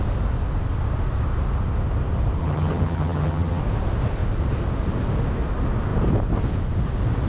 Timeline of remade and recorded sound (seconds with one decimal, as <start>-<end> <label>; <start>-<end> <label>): 0.0-2.4 recorded; 2.4-3.6 remade; 3.6-7.3 recorded